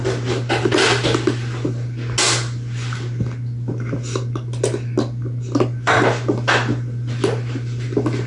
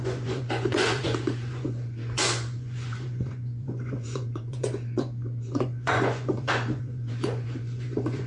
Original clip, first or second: first